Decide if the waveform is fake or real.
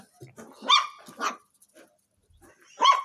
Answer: real